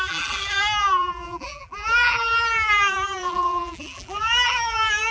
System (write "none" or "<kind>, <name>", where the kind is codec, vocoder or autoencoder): vocoder, BigVGAN v2